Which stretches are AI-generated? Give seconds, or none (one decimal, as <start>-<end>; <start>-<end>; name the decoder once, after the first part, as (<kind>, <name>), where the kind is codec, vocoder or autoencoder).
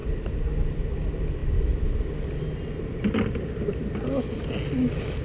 none